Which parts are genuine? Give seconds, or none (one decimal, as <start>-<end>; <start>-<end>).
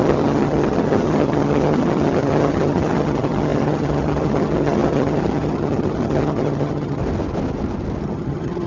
7.0-8.0